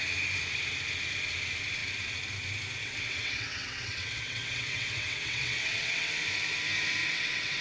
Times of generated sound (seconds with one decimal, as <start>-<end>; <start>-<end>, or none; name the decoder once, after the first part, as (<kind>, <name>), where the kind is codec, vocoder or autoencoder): 2.8-6.1 (vocoder, WaveNeXt); 7.0-7.6